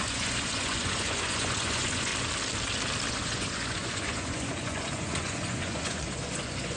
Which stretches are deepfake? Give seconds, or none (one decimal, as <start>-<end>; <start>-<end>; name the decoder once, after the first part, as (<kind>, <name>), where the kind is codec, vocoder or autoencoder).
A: 0.0-2.1 (vocoder, Vocos); 3.1-6.8

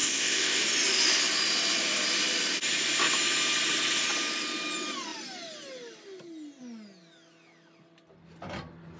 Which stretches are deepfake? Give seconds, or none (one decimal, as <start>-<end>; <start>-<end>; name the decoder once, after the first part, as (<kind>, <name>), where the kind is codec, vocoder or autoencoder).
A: 0.0-0.6 (codec, ZipCodec)

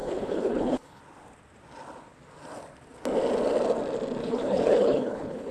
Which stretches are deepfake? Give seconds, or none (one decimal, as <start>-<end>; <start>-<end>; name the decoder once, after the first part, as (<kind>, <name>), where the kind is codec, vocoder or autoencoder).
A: 0.0-1.0 (codec, HILCodec); 4.2-5.5

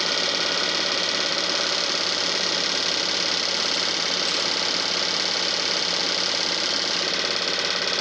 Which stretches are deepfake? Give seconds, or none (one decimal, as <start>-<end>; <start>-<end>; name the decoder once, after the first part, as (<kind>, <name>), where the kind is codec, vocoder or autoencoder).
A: 1.3-2.8 (vocoder, BigVGAN v2); 6.0-6.7